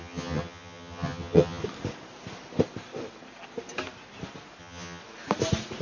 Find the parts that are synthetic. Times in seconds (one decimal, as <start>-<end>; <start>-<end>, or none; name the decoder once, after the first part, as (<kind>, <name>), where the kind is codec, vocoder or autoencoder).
0.0-1.6 (vocoder, HiFi-GAN); 4.6-5.0